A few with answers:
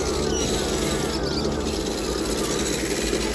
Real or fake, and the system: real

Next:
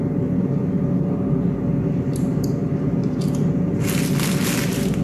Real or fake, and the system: real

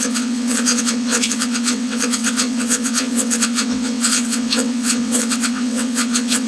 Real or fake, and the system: fake, vocoder, WaveNeXt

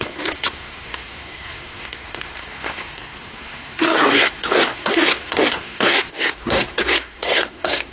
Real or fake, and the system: fake, codec, SNAC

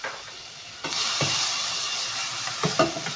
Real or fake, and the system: real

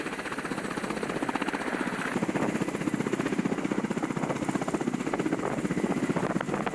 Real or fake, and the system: real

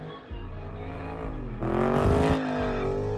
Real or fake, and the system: real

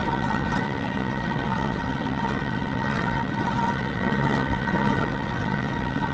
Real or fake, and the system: fake, vocoder, WaveNeXt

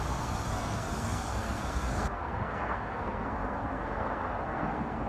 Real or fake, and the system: fake, codec, SNAC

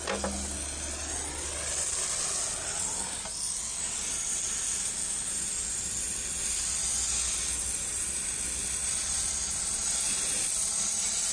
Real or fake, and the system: real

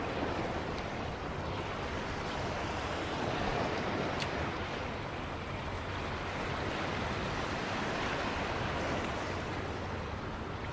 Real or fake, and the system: real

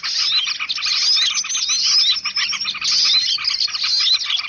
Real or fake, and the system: real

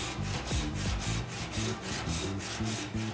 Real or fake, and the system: real